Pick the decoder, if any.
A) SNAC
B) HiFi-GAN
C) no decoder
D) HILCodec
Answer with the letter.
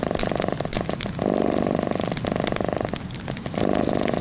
C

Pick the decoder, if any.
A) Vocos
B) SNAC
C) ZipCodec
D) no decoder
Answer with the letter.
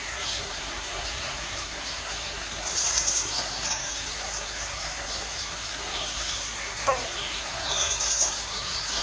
B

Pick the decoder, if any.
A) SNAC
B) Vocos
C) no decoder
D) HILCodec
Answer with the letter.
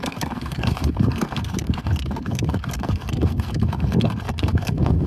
A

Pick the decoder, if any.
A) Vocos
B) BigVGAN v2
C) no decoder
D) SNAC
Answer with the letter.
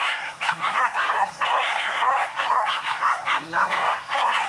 D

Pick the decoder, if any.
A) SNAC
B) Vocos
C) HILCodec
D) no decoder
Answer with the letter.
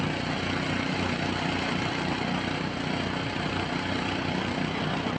D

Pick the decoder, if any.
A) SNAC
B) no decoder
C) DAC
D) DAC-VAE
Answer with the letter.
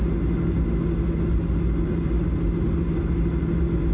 B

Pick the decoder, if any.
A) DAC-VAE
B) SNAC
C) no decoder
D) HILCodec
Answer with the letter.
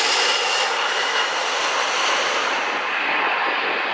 C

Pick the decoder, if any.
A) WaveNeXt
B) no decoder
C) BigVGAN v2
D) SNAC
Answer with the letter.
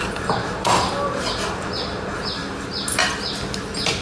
B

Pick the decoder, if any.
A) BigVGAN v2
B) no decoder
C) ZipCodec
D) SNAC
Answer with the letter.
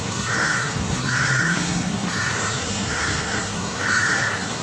D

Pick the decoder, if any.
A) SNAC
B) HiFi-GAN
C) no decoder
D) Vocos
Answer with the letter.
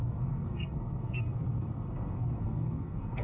A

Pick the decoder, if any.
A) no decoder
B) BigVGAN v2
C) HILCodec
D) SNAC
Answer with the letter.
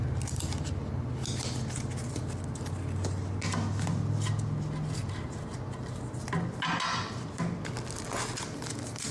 A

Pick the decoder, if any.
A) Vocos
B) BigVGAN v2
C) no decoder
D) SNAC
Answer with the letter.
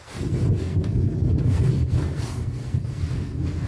D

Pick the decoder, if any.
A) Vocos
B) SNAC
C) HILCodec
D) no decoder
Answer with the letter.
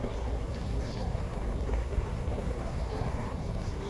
B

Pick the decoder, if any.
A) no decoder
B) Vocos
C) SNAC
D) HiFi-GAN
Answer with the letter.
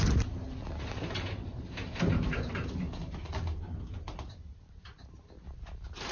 A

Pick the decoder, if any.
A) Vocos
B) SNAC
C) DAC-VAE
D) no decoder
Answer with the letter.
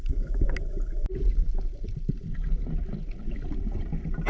D